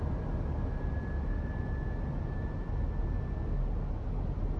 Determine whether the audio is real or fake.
real